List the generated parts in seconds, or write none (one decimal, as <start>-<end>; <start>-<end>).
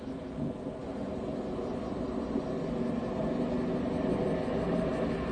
none